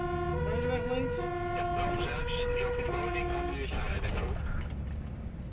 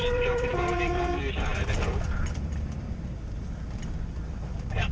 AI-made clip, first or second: second